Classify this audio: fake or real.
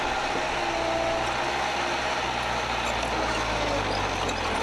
real